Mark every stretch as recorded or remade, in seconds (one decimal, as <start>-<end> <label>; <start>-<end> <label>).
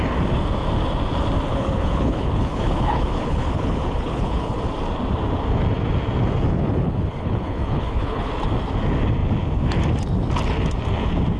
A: 0.0-1.5 recorded; 1.5-4.6 remade; 4.6-6.6 recorded; 6.6-8.3 remade; 8.3-11.4 recorded